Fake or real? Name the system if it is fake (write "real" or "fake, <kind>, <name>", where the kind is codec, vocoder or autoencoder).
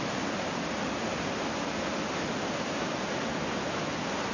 real